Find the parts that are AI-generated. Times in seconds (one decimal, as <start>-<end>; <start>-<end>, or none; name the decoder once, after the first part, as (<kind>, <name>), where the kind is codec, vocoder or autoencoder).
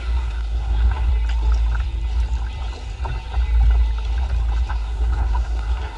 0.0-1.1 (codec, SNAC); 4.7-6.0